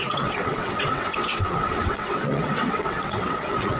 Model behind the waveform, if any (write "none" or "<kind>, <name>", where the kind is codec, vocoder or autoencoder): vocoder, WaveNeXt